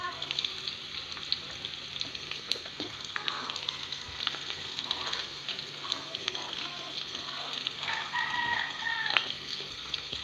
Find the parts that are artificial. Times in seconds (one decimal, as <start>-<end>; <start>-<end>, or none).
0.0-0.5; 2.1-10.2